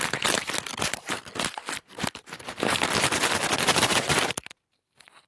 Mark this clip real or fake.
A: real